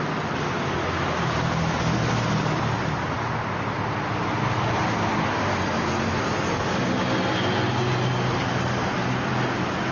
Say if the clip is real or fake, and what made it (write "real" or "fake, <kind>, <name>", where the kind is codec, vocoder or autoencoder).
real